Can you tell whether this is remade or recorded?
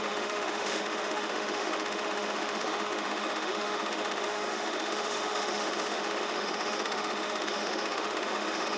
remade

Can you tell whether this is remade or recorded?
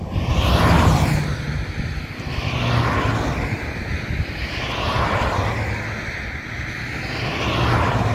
recorded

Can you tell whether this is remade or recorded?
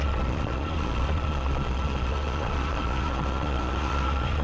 remade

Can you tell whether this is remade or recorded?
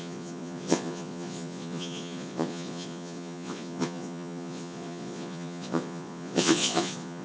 remade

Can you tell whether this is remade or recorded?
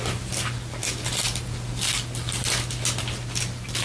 recorded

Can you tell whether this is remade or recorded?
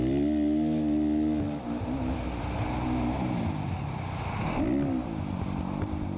recorded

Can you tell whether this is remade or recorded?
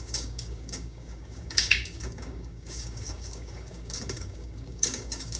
remade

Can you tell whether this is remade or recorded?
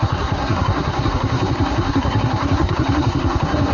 remade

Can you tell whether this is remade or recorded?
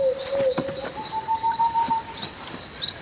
recorded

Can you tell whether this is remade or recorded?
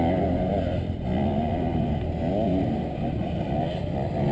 remade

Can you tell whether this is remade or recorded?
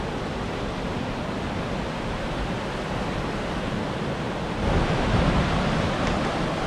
recorded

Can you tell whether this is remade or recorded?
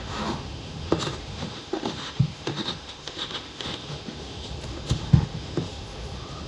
remade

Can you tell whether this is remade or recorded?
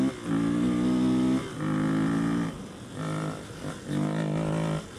recorded